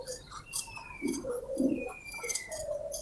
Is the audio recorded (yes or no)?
no